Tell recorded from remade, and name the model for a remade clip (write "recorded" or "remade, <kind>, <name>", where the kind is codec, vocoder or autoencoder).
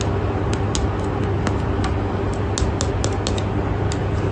recorded